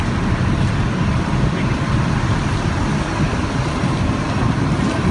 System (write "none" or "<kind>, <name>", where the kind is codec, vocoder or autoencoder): none